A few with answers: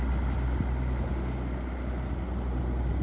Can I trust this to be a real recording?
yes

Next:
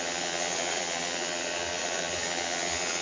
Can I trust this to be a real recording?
no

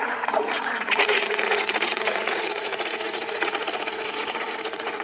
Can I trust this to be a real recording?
no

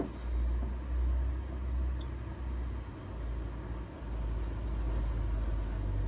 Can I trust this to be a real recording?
yes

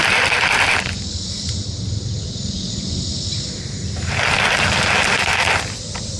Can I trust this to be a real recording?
yes